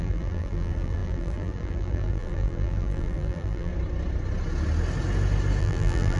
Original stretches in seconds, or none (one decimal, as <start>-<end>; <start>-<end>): 3.7-5.6